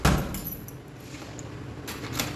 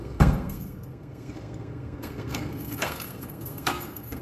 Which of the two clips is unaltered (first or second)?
first